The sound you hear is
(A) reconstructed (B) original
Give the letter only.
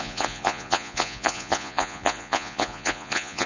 A